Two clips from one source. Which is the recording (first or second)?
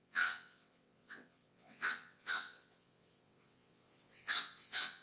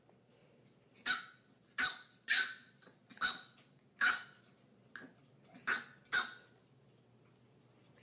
second